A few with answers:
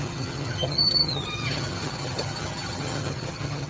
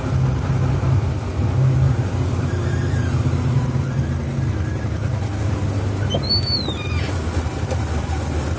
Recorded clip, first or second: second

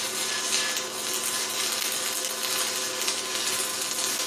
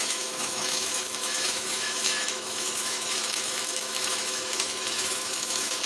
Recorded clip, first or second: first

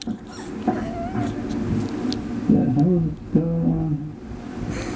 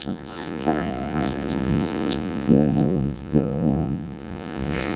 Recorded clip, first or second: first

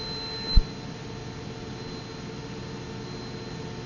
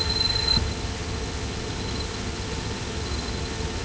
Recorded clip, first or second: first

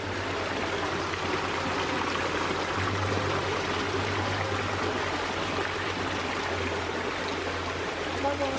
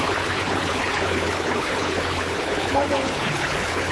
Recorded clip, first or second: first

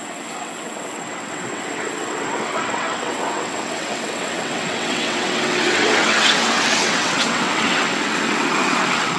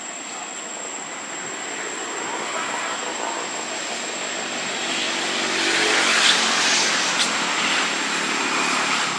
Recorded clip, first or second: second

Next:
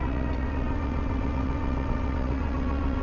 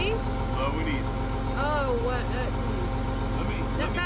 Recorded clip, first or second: second